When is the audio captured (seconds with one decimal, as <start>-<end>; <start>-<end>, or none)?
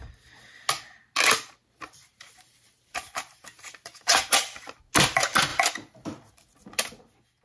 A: 0.0-1.6; 4.4-7.4